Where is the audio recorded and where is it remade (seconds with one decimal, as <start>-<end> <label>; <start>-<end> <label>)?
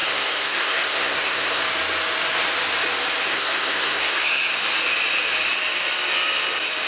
0.0-1.6 remade; 1.6-3.3 recorded; 3.3-4.5 remade; 4.5-6.9 recorded